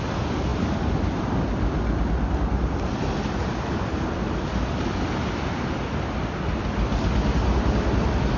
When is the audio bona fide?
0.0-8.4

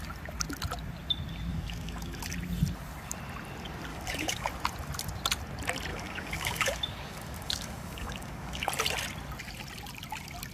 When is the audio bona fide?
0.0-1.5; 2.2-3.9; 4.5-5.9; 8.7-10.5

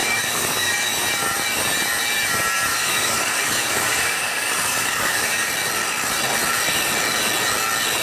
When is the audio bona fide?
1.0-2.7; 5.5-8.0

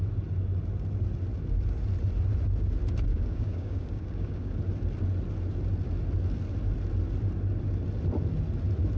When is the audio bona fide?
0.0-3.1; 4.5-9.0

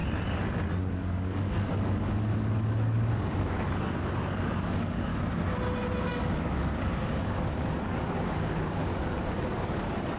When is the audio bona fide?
0.0-0.9; 5.1-6.0

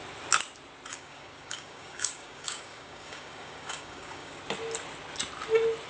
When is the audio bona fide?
0.0-0.9; 4.4-5.9

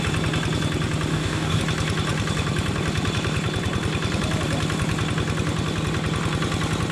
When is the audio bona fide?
0.0-1.1; 1.6-6.9

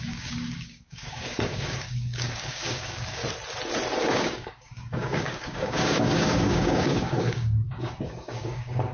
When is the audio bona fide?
3.2-4.0